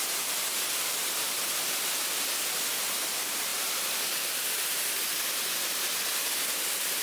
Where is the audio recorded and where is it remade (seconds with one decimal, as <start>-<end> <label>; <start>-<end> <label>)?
0.0-3.5 recorded; 3.5-4.7 remade; 4.7-7.0 recorded